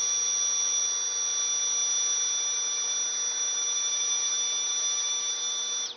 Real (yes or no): yes